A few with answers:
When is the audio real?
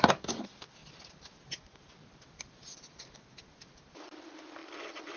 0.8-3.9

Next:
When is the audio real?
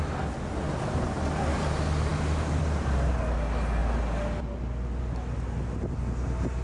0.0-6.6